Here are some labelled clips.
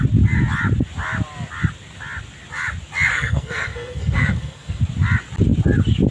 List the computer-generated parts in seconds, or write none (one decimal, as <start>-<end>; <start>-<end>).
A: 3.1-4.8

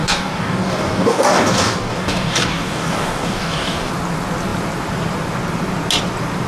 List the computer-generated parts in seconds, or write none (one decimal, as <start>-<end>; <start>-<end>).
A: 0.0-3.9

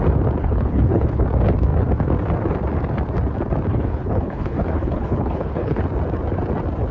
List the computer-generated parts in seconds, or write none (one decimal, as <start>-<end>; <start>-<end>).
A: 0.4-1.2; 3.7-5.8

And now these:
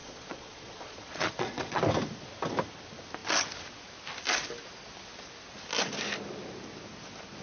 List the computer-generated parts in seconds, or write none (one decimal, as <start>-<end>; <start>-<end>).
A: 0.0-1.8

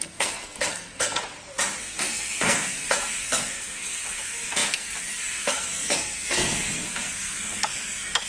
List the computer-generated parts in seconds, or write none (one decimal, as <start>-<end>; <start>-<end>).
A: 0.0-1.2; 1.8-8.3